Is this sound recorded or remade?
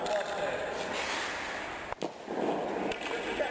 recorded